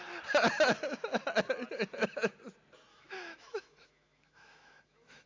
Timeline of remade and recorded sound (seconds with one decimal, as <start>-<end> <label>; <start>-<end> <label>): 0.0-2.9 recorded; 2.9-5.3 remade

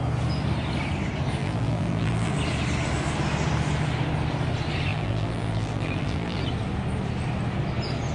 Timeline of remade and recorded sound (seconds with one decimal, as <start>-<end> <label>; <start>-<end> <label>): 0.0-1.4 recorded; 1.4-2.3 remade; 2.3-4.9 recorded; 4.9-6.4 remade; 6.4-8.1 recorded

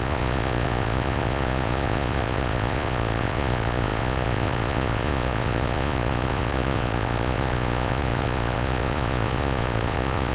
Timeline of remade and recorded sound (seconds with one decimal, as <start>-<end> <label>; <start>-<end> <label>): 0.0-10.3 remade

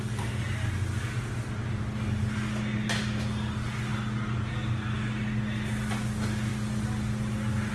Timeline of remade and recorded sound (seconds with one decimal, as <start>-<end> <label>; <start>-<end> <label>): 0.0-7.7 recorded

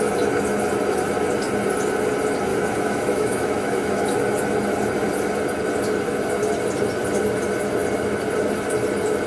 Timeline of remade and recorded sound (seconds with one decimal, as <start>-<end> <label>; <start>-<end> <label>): 0.0-2.5 recorded; 2.5-4.0 remade; 4.0-9.3 recorded

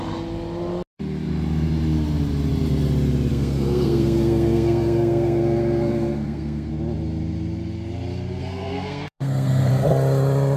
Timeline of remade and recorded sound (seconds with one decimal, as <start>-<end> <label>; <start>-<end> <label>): 0.0-3.3 recorded; 3.3-6.7 remade; 6.7-8.4 recorded; 8.4-9.7 remade; 9.7-10.6 recorded